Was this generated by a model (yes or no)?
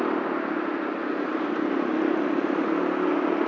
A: no